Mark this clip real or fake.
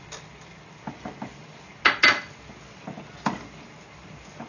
real